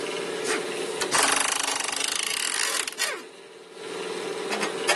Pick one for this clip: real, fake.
real